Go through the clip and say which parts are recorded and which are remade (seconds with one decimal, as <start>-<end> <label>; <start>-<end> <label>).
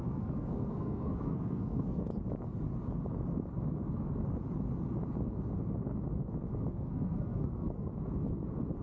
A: 0.0-2.1 remade; 2.1-6.7 recorded; 6.7-7.9 remade; 7.9-8.8 recorded